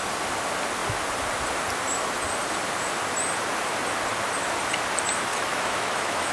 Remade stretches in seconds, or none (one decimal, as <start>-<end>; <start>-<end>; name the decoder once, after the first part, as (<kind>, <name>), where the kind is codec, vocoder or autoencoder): 5.3-6.3 (autoencoder, DAC-VAE)